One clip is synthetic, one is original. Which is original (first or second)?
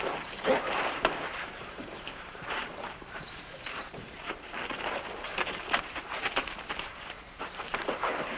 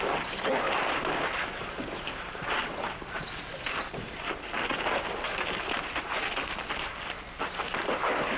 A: second